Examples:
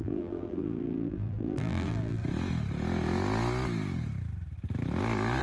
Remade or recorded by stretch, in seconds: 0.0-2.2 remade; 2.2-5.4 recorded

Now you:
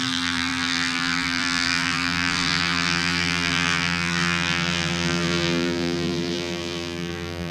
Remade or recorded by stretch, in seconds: 0.0-7.5 remade

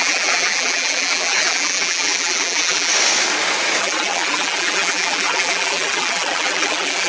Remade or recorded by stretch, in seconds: 0.0-2.9 remade; 2.9-3.8 recorded; 3.8-7.1 remade

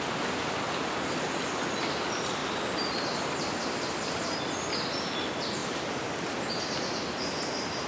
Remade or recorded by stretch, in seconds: 0.0-2.4 recorded; 2.4-4.4 remade; 4.4-5.6 recorded; 5.6-7.5 remade; 7.5-7.9 recorded

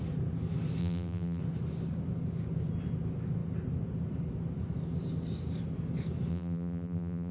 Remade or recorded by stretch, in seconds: 0.0-0.8 recorded; 0.8-1.4 remade; 1.4-6.3 recorded; 6.3-7.3 remade

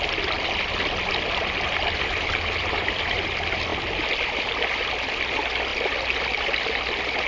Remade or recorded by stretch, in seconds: 0.0-7.3 recorded

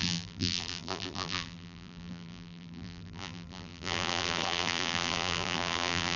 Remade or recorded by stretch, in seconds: 0.0-6.2 remade

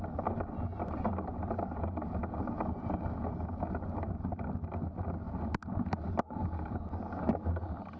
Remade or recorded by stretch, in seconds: 0.0-8.0 recorded